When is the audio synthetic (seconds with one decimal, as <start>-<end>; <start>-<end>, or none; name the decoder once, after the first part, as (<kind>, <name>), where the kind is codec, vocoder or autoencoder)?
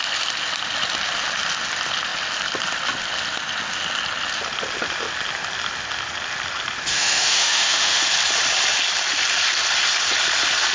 6.9-8.0 (autoencoder, DAC-VAE)